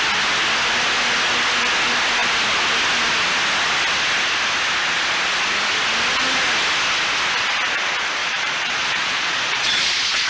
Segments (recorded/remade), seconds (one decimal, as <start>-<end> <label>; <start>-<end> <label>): 0.0-8.2 recorded; 8.2-10.3 remade